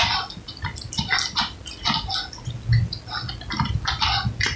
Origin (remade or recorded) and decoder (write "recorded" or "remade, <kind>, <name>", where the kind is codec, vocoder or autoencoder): recorded